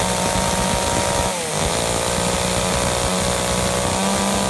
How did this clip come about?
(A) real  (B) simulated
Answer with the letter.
A